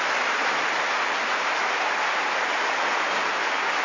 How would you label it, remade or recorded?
recorded